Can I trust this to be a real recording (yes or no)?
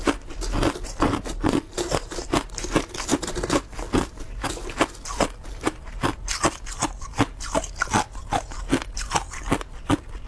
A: yes